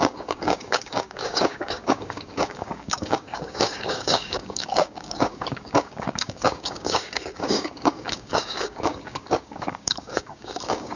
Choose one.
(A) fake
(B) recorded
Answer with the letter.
A